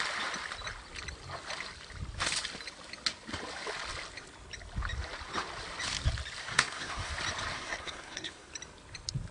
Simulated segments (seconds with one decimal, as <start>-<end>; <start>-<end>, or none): 6.4-7.1; 7.5-8.5